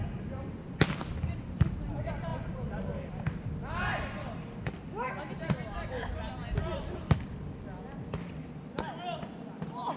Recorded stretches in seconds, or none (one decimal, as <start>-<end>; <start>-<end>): none